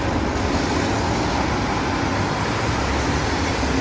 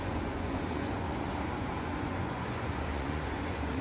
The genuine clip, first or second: first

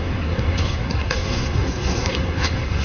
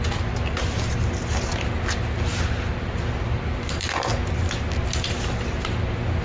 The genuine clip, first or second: second